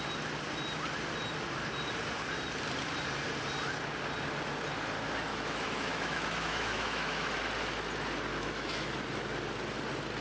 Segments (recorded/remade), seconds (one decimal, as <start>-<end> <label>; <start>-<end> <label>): 0.0-5.3 recorded; 5.3-7.4 remade; 7.4-8.3 recorded; 8.3-8.9 remade; 8.9-10.2 recorded

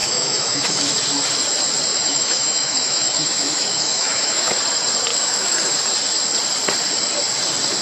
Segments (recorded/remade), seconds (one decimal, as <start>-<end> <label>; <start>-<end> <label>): 0.0-0.9 remade; 0.9-1.9 recorded; 1.9-4.6 remade; 4.6-5.1 recorded; 5.1-5.8 remade; 5.8-7.8 recorded

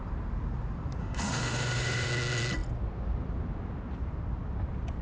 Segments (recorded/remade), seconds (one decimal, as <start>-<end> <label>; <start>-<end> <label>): 0.0-1.0 recorded; 1.0-2.1 remade; 2.1-5.0 recorded

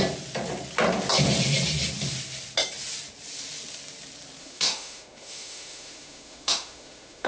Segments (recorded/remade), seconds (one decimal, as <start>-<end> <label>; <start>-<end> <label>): 0.0-4.4 recorded; 4.4-7.3 remade

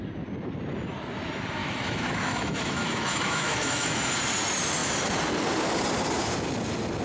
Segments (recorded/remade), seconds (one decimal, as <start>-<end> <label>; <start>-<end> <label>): 0.0-1.6 recorded; 1.6-4.1 remade; 4.1-7.0 recorded

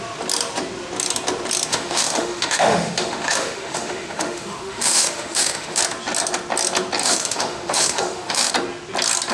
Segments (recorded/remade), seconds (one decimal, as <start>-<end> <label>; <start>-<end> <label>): 0.0-1.7 recorded; 1.7-5.8 remade; 5.8-7.0 recorded; 7.0-8.5 remade; 8.5-9.3 recorded

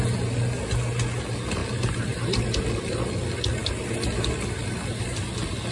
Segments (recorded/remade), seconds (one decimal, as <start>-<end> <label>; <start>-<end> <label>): 0.0-5.7 recorded